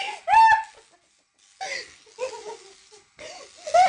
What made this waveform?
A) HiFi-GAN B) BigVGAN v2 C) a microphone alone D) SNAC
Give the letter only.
C